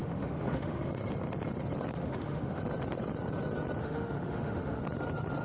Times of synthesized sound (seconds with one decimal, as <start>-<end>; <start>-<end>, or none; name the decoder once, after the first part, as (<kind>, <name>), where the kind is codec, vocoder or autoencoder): 0.0-0.9 (autoencoder, DAC-VAE); 2.0-2.6; 3.8-4.8